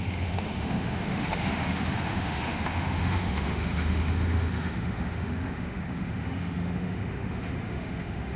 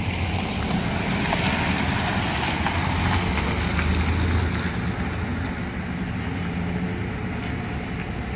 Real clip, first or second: second